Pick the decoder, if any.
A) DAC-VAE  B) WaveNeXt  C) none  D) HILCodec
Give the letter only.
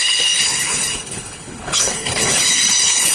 D